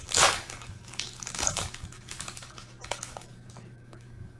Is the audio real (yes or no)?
no